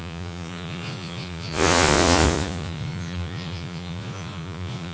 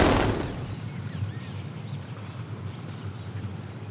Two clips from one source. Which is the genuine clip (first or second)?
second